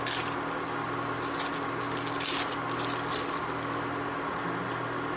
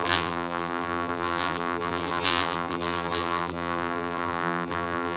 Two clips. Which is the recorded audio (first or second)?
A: first